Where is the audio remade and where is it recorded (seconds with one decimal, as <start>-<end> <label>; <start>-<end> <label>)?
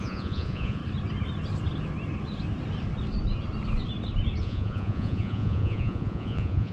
0.0-0.8 remade; 0.8-4.4 recorded; 4.4-6.7 remade